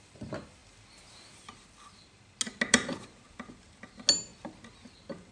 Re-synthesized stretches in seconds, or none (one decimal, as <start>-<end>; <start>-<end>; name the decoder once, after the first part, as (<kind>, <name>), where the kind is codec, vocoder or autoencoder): none